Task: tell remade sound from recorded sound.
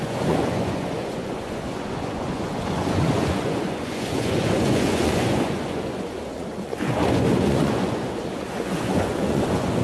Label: remade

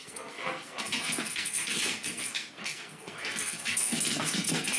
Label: remade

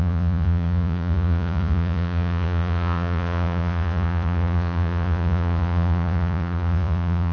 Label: remade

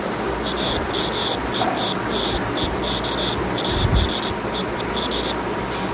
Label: recorded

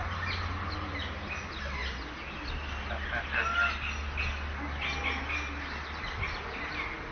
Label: recorded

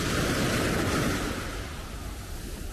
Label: recorded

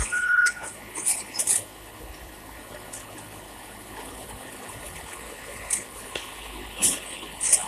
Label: remade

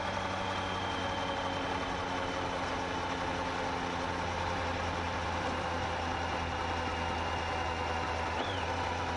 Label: recorded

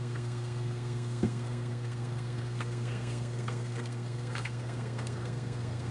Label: remade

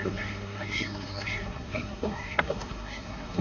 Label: remade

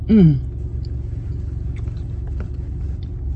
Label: recorded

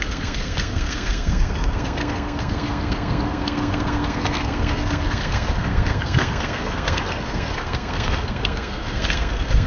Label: remade